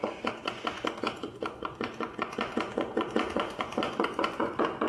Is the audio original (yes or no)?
no